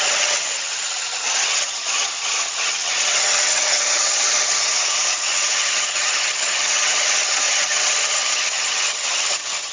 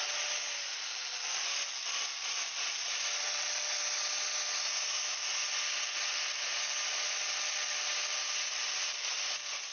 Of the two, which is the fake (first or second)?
first